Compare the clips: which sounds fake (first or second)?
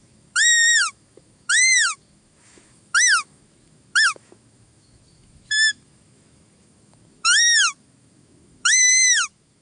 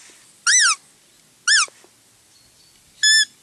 first